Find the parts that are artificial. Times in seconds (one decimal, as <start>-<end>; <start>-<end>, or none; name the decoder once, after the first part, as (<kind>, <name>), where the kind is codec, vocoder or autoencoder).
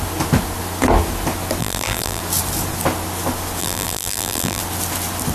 1.6-2.2 (vocoder, BigVGAN v2); 3.6-4.6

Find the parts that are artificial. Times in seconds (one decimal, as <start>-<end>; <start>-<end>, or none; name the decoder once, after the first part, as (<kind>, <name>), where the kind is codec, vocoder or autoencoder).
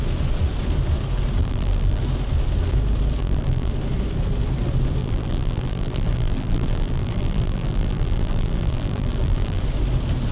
1.4-2.0 (vocoder, BigVGAN v2); 3.2-3.7; 5.0-9.6